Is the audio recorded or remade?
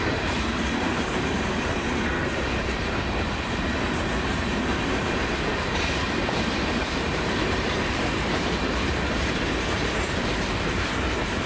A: remade